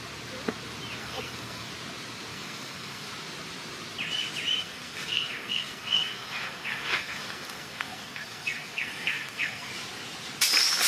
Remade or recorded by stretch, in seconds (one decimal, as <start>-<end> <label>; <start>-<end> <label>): 0.0-1.0 recorded; 1.0-1.7 remade; 1.7-2.3 recorded; 2.3-3.1 remade; 3.1-4.6 recorded; 4.6-9.7 remade; 9.7-10.9 recorded